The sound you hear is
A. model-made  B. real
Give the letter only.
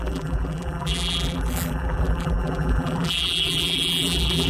A